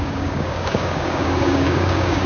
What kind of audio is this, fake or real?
fake